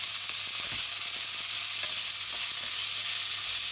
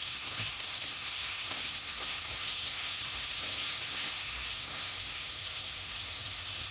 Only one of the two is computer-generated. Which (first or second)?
second